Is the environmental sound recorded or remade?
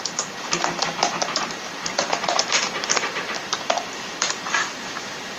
remade